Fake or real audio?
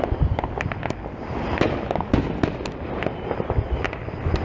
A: real